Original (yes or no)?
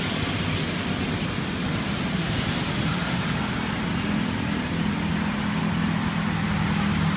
yes